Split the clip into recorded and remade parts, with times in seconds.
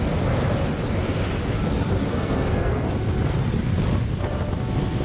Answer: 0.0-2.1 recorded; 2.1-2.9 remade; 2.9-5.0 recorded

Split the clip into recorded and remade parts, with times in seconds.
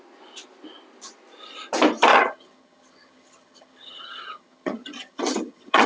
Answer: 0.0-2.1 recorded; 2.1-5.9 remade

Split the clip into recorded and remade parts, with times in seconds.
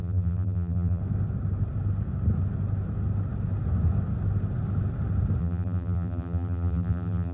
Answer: 0.0-1.0 remade; 1.0-5.4 recorded; 5.4-7.3 remade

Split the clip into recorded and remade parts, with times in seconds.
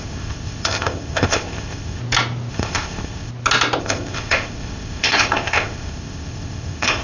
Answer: 0.0-2.0 remade; 2.0-2.5 recorded; 2.5-3.3 remade; 3.3-3.8 recorded; 3.8-7.0 remade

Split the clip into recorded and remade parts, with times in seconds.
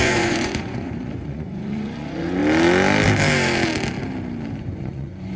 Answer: 0.0-2.4 remade; 2.4-4.6 recorded; 4.6-5.4 remade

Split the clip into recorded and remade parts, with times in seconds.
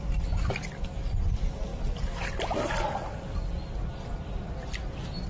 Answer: 0.0-5.3 recorded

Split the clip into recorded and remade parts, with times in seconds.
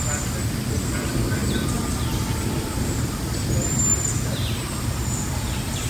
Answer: 0.0-1.4 remade; 1.4-2.4 recorded; 2.4-3.9 remade; 3.9-5.3 recorded; 5.3-5.9 remade